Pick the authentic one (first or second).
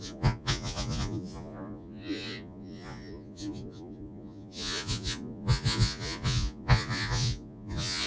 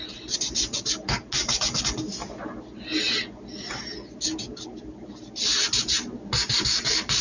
second